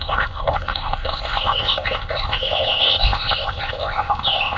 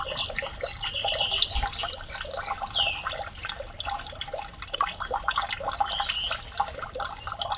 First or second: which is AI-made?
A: first